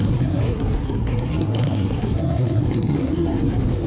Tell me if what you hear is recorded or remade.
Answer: remade